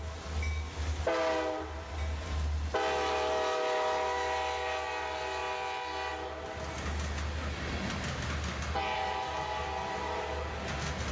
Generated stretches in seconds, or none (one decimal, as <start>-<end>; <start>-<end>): none